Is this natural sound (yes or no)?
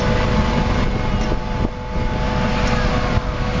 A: yes